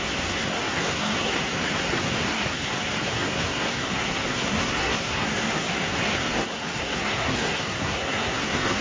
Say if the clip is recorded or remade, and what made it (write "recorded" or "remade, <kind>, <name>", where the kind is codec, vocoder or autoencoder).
remade, codec, SNAC